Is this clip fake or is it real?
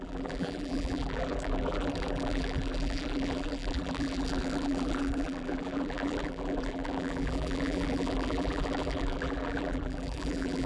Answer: fake